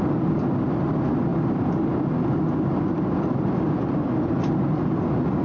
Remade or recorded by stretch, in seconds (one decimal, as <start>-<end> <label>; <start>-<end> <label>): 0.0-5.4 recorded